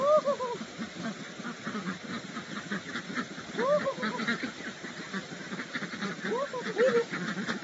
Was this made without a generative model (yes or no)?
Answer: yes